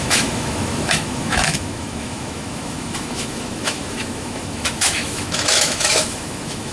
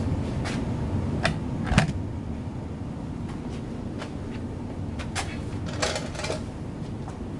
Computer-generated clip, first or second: first